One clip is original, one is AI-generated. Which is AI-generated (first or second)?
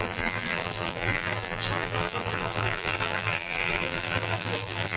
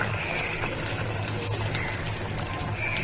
first